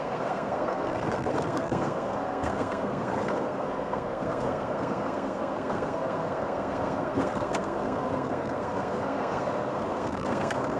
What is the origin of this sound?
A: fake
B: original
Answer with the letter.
A